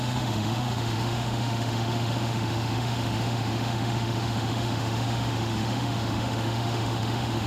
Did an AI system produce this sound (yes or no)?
yes